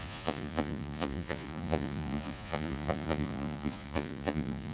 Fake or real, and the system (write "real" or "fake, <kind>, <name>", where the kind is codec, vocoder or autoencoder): fake, vocoder, Vocos